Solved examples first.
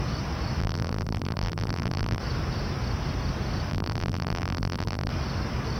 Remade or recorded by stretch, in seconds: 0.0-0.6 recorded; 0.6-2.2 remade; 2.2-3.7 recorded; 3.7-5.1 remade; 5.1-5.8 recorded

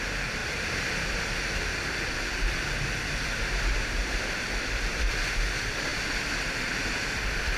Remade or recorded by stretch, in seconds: 0.0-7.6 recorded

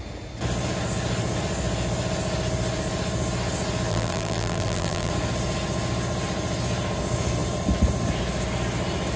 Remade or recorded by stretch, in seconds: 0.0-3.9 recorded; 3.9-5.1 remade; 5.1-9.2 recorded

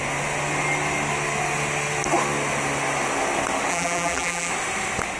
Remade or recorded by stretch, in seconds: 0.0-3.7 recorded; 3.7-4.5 remade; 4.5-5.2 recorded

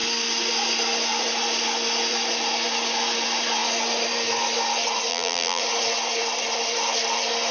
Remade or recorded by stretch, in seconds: 0.0-5.1 recorded; 5.1-5.6 remade; 5.6-7.5 recorded

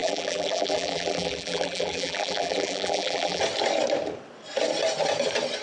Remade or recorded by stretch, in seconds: 0.0-3.4 remade; 3.4-5.6 recorded